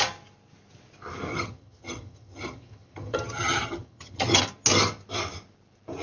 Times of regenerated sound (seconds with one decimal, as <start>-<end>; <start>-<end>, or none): 1.3-4.4